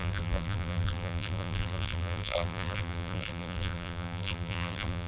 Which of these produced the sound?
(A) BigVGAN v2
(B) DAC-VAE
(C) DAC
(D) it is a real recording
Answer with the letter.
A